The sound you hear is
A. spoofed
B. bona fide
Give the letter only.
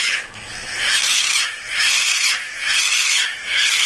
A